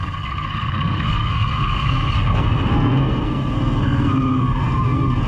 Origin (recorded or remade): remade